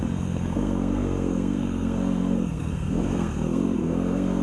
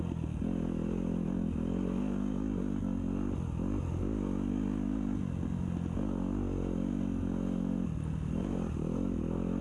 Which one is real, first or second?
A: second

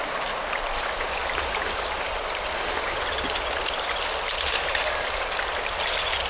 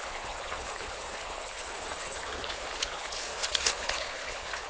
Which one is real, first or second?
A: first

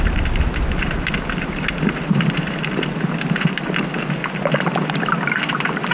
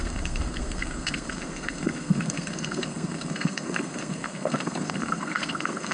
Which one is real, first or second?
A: first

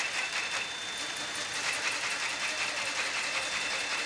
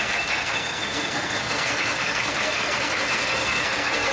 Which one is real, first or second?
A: first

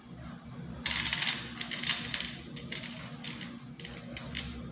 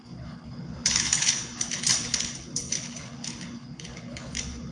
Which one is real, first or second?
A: first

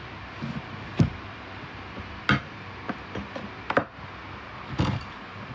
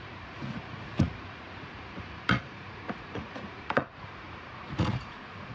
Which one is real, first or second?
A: first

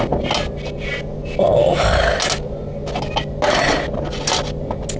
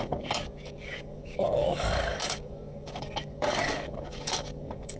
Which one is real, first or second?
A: first